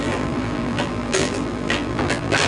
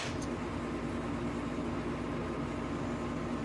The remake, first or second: first